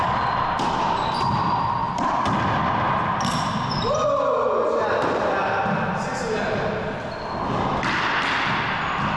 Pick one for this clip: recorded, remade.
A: recorded